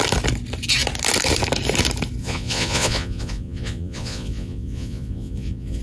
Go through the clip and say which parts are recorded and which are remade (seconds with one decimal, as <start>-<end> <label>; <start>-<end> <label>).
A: 0.0-2.2 recorded; 2.2-5.8 remade